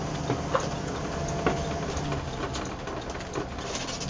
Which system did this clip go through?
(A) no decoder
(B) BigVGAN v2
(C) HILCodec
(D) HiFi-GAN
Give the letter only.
A